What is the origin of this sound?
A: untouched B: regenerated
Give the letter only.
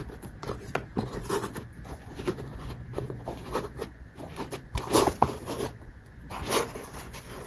B